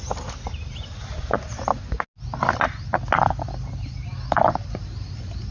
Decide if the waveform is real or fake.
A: real